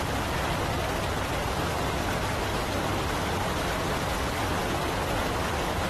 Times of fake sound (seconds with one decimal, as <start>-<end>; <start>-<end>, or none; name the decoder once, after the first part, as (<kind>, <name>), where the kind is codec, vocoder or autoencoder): none